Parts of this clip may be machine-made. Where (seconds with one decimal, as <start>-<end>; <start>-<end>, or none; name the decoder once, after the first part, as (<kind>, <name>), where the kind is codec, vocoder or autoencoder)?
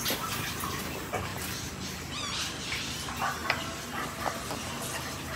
none